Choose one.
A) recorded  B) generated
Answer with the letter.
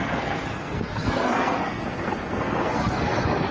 B